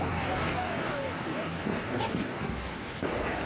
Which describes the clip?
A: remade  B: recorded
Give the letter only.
A